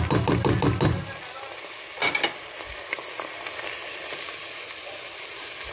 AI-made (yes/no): no